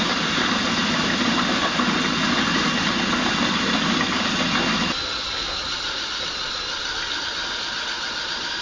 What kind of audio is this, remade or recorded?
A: recorded